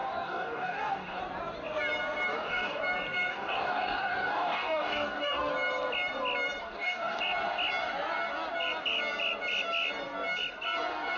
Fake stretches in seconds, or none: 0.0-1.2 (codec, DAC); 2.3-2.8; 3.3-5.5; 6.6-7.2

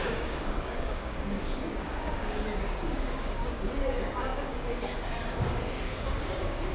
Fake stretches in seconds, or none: 0.0-6.7 (codec, DAC)

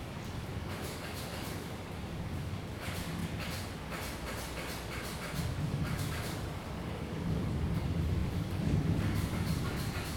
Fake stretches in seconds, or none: 0.0-3.2 (codec, DAC); 5.4-10.2

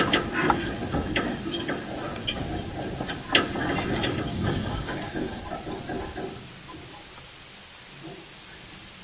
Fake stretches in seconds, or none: 4.3-5.4 (codec, DAC)

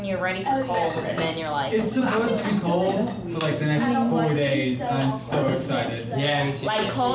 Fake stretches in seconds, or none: none

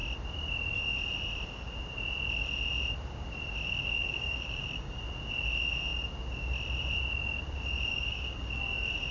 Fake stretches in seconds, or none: 3.8-5.0 (codec, DAC); 7.9-8.6

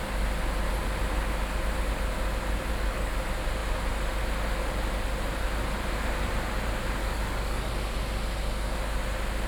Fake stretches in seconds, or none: 2.7-3.2 (codec, DAC); 7.0-7.7